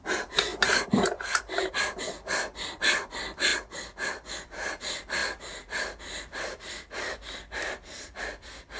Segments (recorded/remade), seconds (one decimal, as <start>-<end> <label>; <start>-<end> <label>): 0.0-8.8 recorded